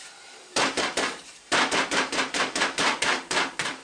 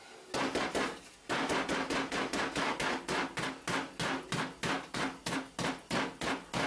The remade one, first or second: first